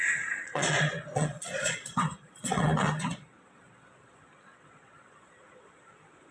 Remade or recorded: remade